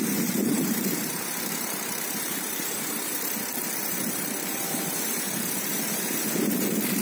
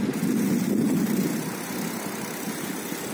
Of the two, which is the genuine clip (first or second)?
second